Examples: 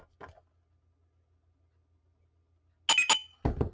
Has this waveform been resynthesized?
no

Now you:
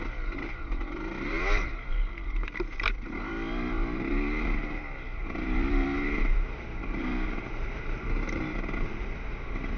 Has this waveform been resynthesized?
yes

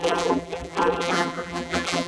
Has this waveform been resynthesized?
yes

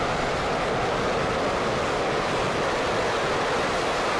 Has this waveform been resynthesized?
yes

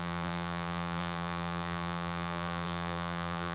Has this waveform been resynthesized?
yes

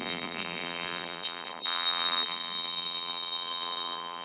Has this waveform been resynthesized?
yes